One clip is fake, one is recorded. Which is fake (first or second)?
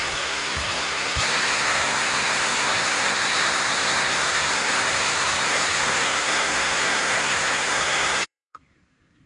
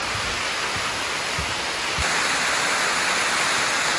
first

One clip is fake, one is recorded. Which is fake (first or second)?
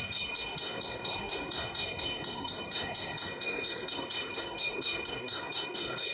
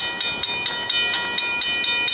first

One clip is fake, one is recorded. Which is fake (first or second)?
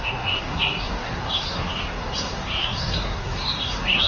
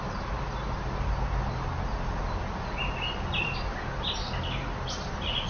first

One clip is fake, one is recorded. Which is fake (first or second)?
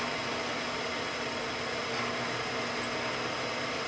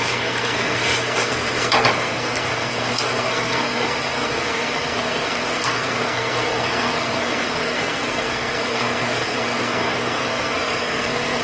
second